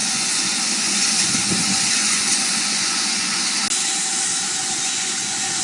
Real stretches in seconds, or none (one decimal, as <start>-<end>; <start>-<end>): 3.4-4.6